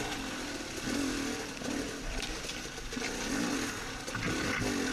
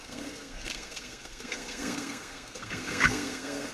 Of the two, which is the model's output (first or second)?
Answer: second